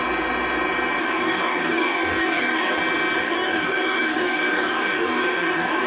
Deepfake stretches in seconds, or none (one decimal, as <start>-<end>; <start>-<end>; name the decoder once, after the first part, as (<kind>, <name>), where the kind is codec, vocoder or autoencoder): 1.0-2.8 (codec, DAC); 3.2-5.9